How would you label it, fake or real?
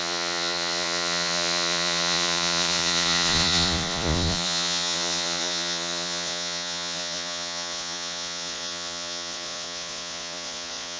fake